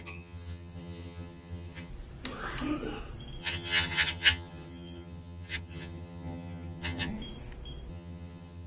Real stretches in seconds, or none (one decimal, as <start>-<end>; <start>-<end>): 1.9-3.4; 7.1-7.9